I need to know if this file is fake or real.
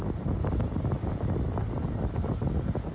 real